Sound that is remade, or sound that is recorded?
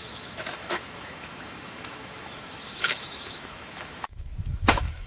remade